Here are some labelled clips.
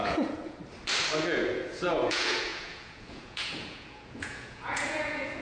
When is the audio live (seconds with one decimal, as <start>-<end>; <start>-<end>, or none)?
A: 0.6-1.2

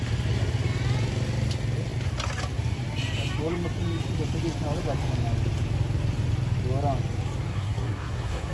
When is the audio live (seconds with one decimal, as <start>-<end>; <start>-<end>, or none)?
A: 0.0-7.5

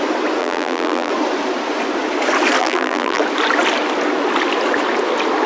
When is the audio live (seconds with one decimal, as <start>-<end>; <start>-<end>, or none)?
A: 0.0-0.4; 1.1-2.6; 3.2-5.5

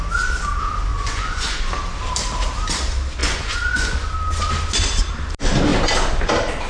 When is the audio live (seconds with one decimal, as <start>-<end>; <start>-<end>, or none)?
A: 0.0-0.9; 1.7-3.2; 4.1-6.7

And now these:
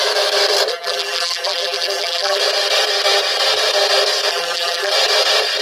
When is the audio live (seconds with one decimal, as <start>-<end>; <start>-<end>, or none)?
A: 0.0-0.7; 2.4-4.3; 4.9-5.6